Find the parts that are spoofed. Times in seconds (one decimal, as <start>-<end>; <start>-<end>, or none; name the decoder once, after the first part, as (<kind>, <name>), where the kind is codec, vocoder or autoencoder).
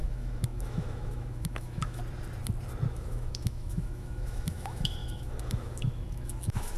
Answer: 0.0-2.0 (autoencoder, DAC-VAE); 2.9-6.8